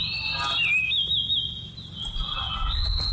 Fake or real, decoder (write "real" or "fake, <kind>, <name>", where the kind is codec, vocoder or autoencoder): real